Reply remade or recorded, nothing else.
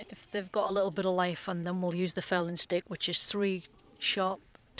remade